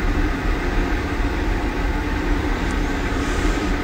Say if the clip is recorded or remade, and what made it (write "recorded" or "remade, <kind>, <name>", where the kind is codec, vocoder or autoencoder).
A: remade, vocoder, BigVGAN v2